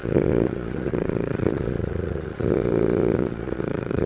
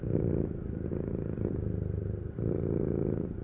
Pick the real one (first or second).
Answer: second